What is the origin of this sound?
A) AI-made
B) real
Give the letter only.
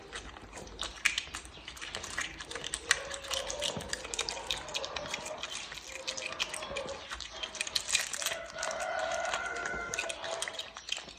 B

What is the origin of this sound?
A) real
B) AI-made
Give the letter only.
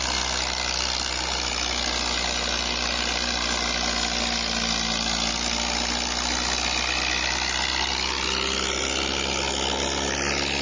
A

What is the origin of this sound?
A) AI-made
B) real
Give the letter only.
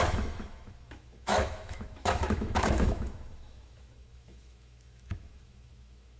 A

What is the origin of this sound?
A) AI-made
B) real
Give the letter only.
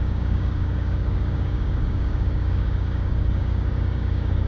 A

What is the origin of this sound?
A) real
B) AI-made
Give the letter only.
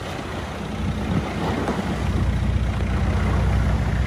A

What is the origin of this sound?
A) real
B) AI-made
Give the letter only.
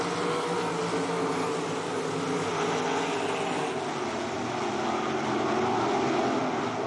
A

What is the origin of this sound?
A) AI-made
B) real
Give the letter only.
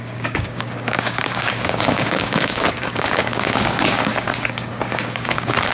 A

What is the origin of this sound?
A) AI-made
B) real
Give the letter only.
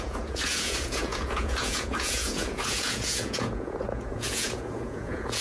A